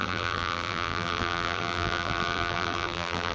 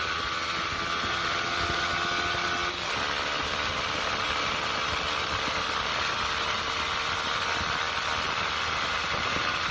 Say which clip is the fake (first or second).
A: first